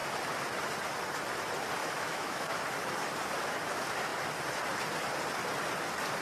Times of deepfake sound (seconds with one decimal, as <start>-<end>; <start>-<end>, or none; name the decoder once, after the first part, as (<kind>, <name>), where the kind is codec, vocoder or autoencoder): 1.8-2.6 (autoencoder, DAC-VAE)